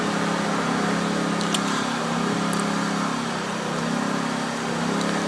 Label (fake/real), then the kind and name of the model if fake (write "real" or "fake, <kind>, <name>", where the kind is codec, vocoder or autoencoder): real